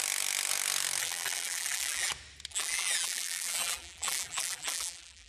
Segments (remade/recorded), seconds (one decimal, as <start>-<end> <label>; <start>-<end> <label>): 0.0-1.0 recorded; 1.0-2.1 remade; 2.1-2.5 recorded; 2.5-5.3 remade